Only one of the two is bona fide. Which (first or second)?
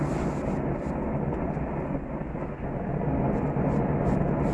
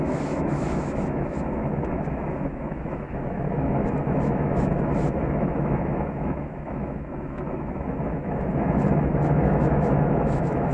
first